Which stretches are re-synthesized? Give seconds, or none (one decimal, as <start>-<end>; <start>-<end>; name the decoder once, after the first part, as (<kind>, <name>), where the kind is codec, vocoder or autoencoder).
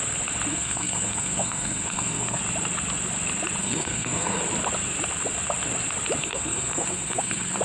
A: 0.5-2.4 (codec, SNAC); 3.6-4.4; 6.2-7.6